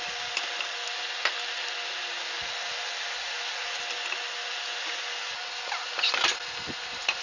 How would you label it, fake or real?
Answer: real